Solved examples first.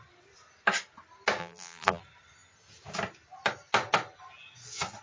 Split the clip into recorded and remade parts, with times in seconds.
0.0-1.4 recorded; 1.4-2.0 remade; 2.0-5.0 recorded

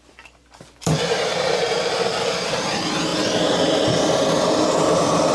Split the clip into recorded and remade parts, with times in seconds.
0.0-5.3 remade

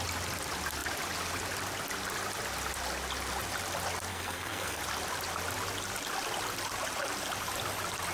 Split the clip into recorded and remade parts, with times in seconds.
0.0-4.1 recorded; 4.1-4.8 remade; 4.8-8.1 recorded